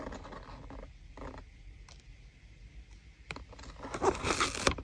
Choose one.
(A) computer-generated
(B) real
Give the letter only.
B